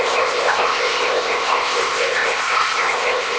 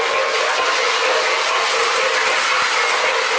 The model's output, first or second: first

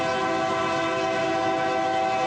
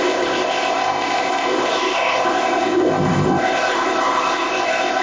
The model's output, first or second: second